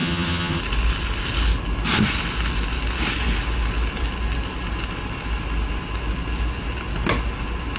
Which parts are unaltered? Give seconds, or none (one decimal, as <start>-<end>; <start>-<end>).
0.6-7.8